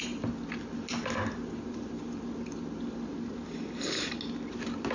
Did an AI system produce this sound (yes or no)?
no